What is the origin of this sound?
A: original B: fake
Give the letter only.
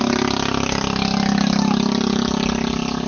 A